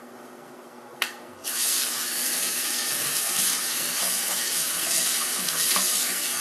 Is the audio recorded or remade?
remade